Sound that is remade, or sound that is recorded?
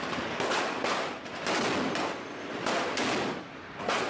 recorded